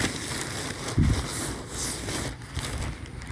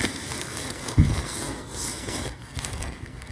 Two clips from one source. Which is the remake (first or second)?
second